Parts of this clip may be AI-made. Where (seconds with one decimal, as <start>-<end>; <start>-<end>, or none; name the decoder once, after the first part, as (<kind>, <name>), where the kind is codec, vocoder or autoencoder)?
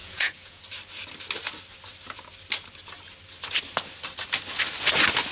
0.0-0.6 (vocoder, Vocos)